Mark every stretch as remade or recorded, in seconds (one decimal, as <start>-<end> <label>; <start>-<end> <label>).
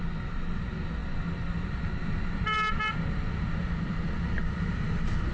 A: 0.0-5.3 recorded